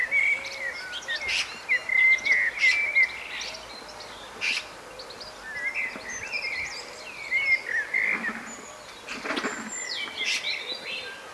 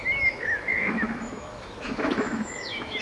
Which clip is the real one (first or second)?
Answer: first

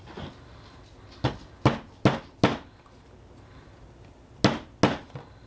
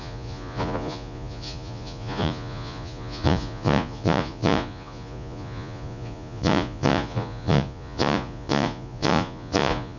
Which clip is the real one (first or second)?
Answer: first